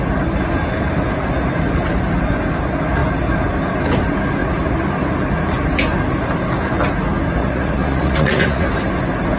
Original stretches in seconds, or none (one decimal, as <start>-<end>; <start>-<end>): 0.0-7.4; 8.7-9.4